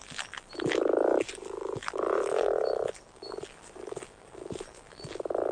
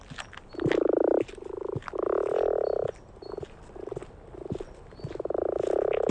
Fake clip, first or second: first